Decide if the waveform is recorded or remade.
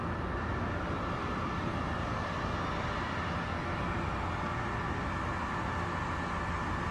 recorded